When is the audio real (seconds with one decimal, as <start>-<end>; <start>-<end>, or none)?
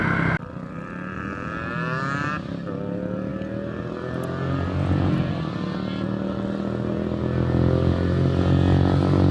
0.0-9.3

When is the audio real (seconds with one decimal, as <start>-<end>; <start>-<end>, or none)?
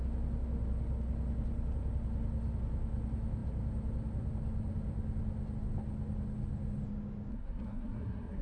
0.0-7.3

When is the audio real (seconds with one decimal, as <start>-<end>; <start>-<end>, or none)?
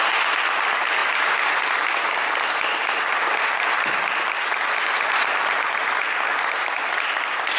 0.0-7.6